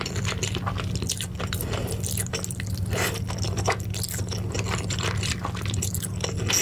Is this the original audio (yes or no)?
yes